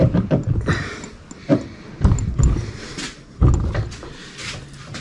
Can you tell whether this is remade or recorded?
recorded